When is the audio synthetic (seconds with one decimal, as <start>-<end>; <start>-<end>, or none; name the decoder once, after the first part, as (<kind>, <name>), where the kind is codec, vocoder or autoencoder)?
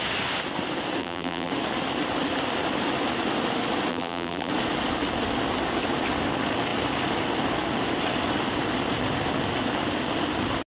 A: 1.0-1.5 (vocoder, BigVGAN v2); 3.9-4.5